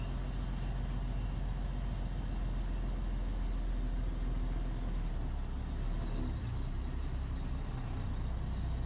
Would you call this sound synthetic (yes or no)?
no